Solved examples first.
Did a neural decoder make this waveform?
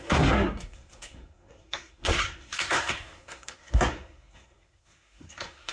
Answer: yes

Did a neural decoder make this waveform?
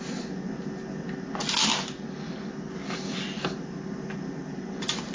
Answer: no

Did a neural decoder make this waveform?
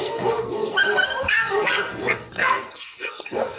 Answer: yes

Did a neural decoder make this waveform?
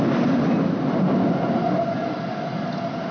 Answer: no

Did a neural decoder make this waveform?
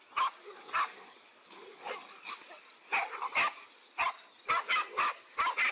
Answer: no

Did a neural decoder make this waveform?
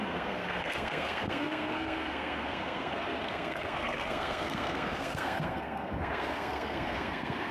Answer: yes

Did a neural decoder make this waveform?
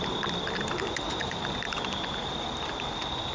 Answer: no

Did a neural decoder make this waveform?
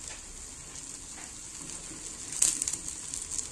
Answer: no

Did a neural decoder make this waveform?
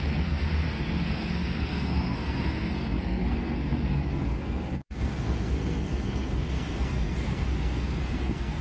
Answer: yes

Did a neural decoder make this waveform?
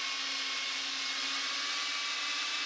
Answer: no